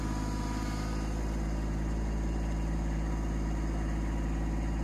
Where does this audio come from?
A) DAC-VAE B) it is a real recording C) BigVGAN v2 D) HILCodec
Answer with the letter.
B